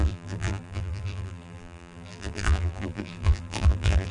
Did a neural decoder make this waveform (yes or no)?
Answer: yes